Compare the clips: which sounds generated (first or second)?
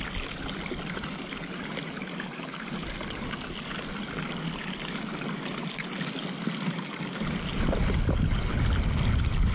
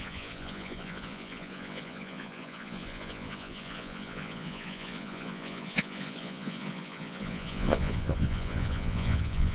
second